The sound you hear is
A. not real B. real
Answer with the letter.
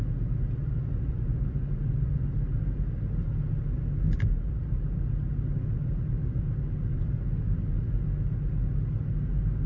B